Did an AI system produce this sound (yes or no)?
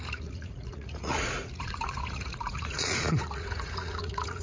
yes